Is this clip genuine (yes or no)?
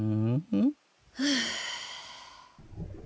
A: yes